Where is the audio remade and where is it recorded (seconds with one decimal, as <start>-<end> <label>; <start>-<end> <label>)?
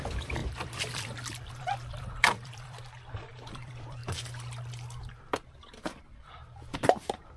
0.0-2.8 remade; 2.8-3.5 recorded; 3.5-4.0 remade; 4.0-6.0 recorded; 6.0-7.4 remade